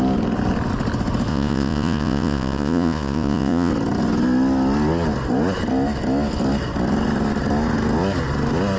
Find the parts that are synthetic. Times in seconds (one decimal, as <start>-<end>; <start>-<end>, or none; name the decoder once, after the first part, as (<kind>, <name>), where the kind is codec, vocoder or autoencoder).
1.3-3.7 (vocoder, Vocos)